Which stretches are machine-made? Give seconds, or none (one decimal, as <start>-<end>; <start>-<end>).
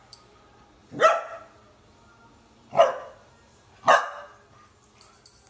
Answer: none